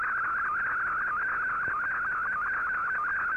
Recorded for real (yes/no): yes